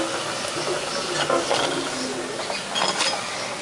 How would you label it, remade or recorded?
recorded